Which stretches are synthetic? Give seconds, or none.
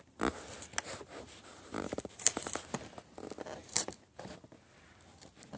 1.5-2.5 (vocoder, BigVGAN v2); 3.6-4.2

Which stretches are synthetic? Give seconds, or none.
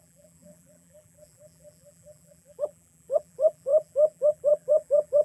0.0-5.2 (vocoder, BigVGAN v2)